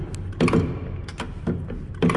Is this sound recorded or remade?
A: recorded